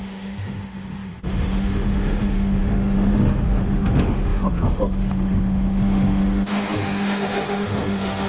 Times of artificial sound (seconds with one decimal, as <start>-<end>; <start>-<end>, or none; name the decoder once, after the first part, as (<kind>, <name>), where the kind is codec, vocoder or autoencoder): 0.0-8.3 (autoencoder, DAC-VAE)